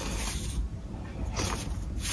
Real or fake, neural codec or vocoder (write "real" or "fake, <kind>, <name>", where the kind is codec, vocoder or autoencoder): real